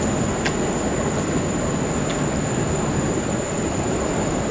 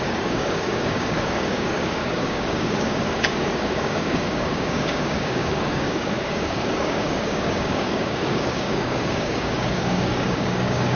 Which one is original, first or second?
first